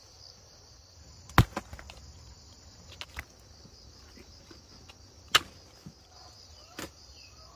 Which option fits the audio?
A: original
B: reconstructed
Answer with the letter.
A